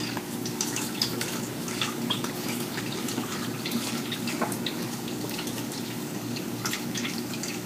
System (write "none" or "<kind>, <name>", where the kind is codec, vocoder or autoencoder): codec, DAC